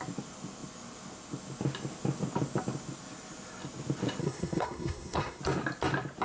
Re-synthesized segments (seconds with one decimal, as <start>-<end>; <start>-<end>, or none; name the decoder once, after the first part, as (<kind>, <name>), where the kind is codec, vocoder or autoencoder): 4.2-5.4 (codec, SNAC)